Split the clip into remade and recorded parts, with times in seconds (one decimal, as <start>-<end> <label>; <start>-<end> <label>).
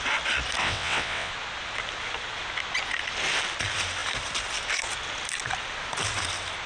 0.0-0.6 recorded; 0.6-1.3 remade; 1.3-6.7 recorded